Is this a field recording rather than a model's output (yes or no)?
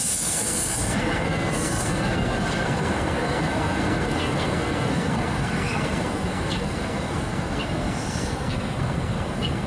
no